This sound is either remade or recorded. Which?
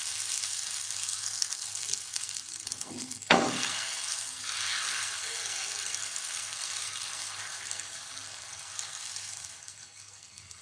remade